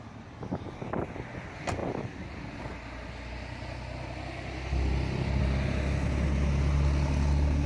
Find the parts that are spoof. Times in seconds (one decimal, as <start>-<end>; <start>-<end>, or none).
none